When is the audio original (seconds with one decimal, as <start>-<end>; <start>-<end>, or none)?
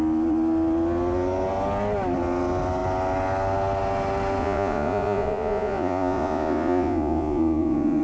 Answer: 0.0-4.4